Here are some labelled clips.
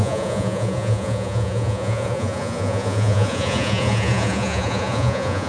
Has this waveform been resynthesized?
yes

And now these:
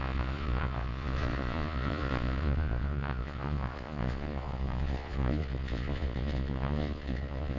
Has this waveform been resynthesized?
yes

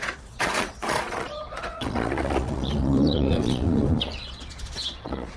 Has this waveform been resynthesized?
yes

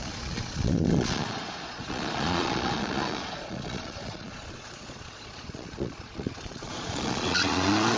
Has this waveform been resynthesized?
yes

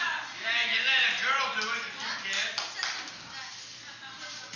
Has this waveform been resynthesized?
no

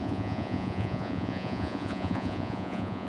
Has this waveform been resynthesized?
yes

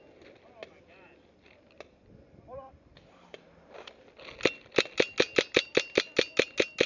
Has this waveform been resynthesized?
no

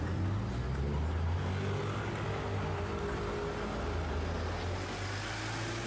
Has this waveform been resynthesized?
no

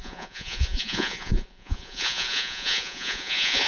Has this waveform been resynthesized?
yes